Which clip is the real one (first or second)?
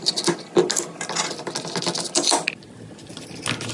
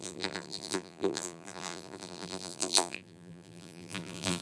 first